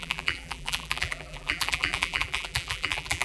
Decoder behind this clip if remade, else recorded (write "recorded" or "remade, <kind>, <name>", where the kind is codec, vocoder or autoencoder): remade, vocoder, BigVGAN v2